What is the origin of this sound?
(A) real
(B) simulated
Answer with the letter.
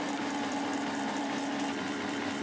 B